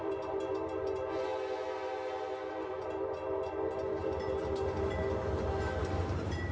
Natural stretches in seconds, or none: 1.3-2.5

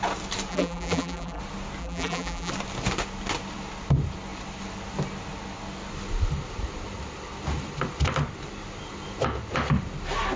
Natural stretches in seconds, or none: 0.0-0.5; 1.4-1.8; 2.5-10.4

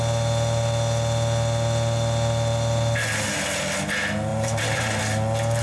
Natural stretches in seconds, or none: 0.0-4.3; 5.0-5.6

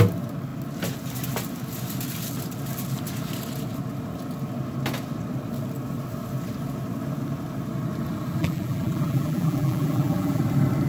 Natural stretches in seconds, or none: 0.0-8.4; 10.4-10.9